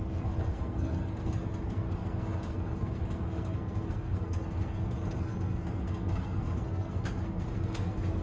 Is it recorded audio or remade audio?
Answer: remade